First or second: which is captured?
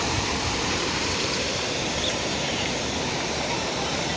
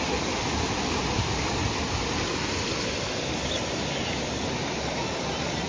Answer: second